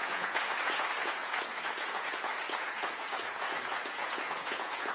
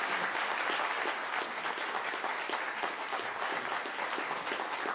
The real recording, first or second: second